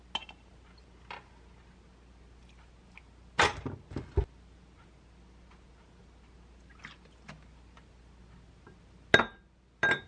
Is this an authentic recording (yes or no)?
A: yes